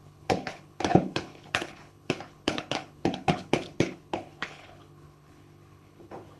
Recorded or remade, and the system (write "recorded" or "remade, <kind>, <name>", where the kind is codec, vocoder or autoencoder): remade, codec, HILCodec